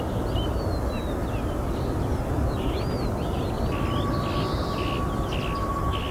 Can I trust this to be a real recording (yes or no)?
yes